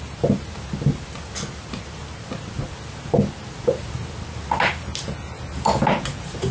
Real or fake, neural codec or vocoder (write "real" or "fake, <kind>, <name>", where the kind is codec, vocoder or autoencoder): real